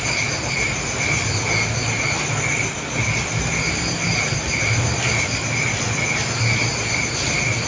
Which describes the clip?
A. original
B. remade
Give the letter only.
A